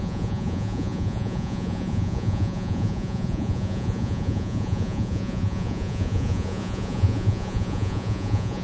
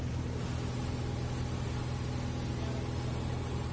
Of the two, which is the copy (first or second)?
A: first